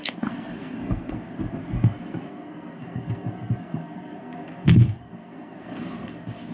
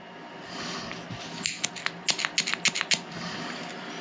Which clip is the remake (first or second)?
first